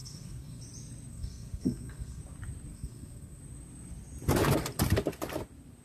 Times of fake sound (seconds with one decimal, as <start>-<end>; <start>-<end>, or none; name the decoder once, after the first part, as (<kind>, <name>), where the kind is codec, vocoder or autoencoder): 0.0-0.6 (codec, SNAC); 1.1-2.2; 2.7-3.4